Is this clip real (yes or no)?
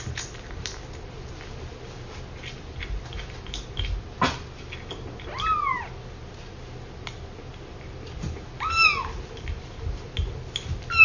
yes